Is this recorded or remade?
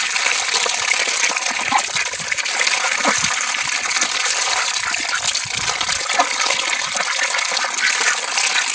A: recorded